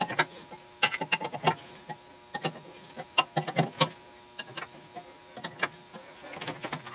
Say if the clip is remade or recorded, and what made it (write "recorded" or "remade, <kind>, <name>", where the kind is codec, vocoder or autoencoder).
recorded